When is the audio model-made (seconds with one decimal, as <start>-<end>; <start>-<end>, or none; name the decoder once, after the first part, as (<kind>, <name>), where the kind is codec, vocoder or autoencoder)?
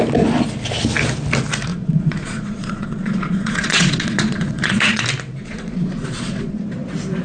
1.7-5.0 (vocoder, Vocos); 5.4-6.6